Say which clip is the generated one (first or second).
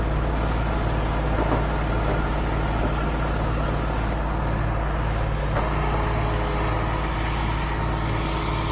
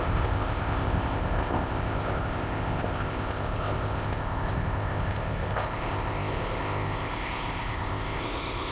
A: second